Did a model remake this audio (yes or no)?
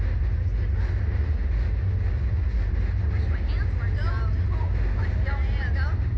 no